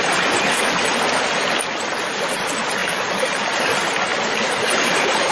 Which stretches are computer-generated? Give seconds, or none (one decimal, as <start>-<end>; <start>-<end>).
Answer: 2.8-3.6; 4.1-5.3